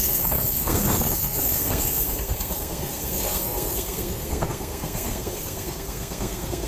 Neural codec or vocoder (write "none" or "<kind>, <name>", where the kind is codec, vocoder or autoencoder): codec, SNAC